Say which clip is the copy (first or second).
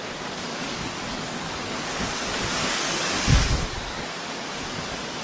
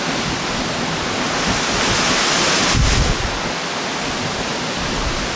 first